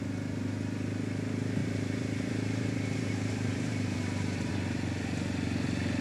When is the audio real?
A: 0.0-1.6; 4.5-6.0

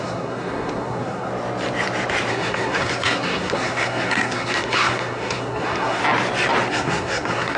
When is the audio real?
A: 1.3-2.3; 6.0-6.7

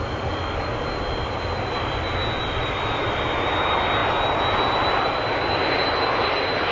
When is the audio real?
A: 0.0-6.7

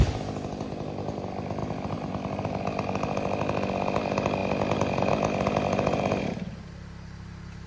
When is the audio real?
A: 0.0-1.6; 2.1-5.9; 6.5-7.7

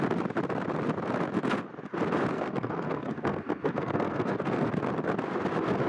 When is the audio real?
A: 0.0-2.3; 4.7-5.9